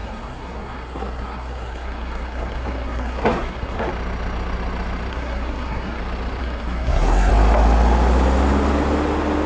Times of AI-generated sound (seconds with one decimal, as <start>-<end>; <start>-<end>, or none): 0.0-3.9; 5.1-6.0; 6.4-7.3

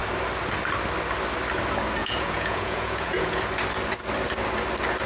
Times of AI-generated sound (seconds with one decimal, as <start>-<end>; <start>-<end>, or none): 2.0-3.4

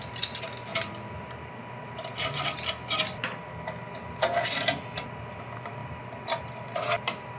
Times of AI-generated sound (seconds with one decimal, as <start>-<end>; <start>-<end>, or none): none

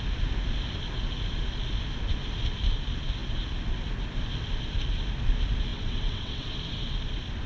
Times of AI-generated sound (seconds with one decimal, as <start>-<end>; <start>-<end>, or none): 5.7-6.5